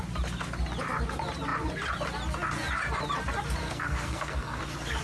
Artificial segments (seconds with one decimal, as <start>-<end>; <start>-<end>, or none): 3.6-4.6